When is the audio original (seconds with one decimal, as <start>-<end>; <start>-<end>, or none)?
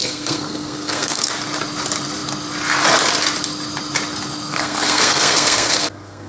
1.3-4.5